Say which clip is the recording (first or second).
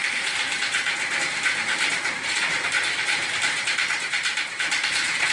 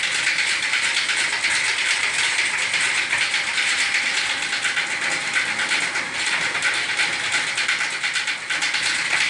second